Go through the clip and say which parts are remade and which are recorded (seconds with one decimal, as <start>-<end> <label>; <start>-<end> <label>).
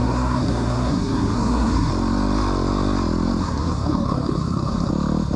0.0-1.9 remade; 1.9-3.4 recorded; 3.4-4.9 remade; 4.9-5.4 recorded